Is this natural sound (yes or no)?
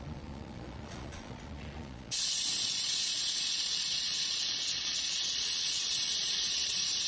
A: no